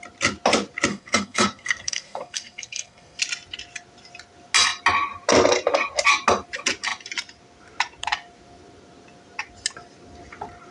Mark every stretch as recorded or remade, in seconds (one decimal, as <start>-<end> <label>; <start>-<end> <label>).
0.0-0.9 recorded; 0.9-3.2 remade; 3.2-10.7 recorded